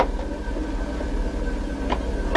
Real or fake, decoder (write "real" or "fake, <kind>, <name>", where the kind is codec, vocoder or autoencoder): real